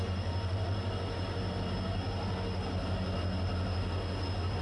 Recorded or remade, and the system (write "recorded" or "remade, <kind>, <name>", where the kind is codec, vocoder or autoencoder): recorded